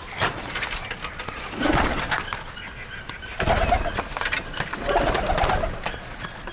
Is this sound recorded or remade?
recorded